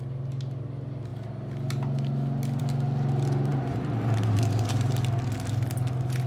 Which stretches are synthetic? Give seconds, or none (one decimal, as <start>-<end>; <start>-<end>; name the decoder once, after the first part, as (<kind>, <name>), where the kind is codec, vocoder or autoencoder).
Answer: 3.5-4.9 (vocoder, BigVGAN v2)